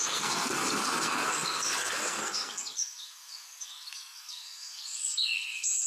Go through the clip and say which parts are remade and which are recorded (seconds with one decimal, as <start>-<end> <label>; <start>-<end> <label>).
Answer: 0.0-5.9 remade